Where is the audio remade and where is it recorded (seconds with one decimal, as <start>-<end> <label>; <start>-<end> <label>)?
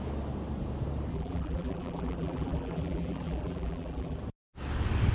0.0-1.1 recorded; 1.1-4.2 remade; 4.2-5.1 recorded